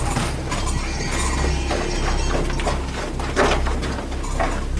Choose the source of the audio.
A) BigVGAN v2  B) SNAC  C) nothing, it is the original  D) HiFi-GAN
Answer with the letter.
C